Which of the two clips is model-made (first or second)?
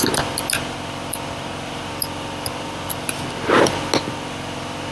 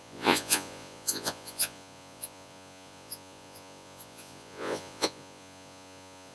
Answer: second